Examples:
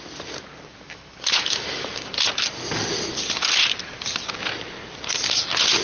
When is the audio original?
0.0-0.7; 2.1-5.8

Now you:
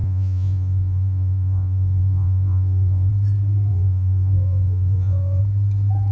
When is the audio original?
3.1-3.7; 5.4-6.1

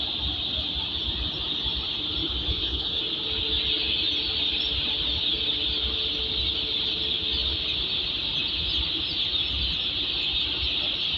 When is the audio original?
0.0-2.5; 3.0-11.2

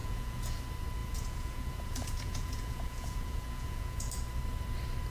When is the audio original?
0.6-1.0; 4.1-5.1

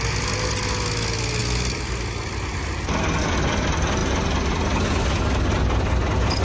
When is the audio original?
0.0-6.4

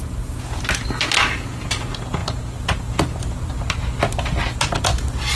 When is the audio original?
0.0-5.4

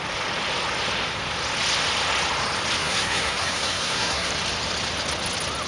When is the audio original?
0.0-2.8; 4.3-5.7

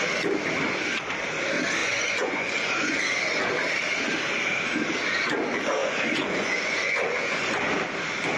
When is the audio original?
0.0-1.8; 3.0-5.8; 7.6-8.4